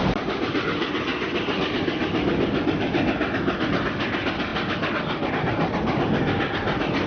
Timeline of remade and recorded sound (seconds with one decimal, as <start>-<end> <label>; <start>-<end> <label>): 0.0-7.1 recorded